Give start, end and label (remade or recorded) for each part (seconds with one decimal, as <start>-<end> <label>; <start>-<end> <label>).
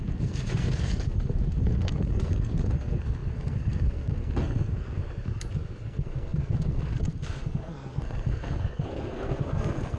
0.0-10.0 remade